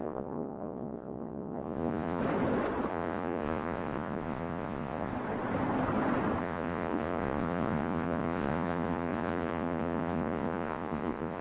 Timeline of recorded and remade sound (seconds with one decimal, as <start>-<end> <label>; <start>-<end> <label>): 0.0-2.2 remade; 2.2-2.9 recorded; 2.9-5.1 remade; 5.1-6.4 recorded; 6.4-11.4 remade